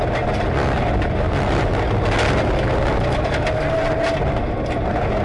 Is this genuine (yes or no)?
yes